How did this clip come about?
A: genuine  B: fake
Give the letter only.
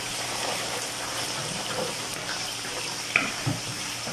B